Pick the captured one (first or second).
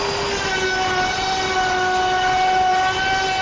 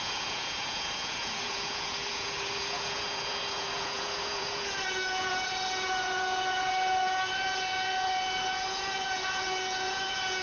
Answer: first